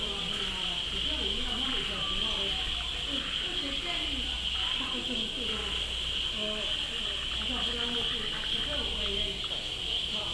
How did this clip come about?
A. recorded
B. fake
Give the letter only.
A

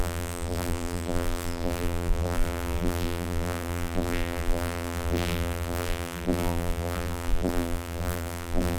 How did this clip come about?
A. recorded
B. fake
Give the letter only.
B